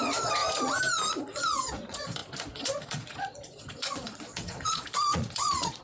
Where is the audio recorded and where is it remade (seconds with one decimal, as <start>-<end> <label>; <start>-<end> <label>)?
0.0-0.4 remade; 0.4-1.2 recorded; 1.2-5.8 remade